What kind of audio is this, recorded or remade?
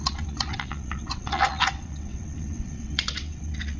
remade